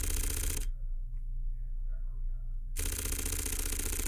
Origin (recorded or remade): recorded